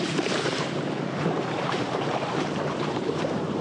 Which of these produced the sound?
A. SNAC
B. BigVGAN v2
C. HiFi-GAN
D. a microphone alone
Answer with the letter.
B